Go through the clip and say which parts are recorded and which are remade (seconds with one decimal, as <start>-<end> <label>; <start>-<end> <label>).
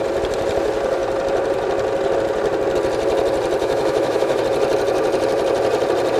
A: 0.0-3.6 recorded; 3.6-4.4 remade; 4.4-6.2 recorded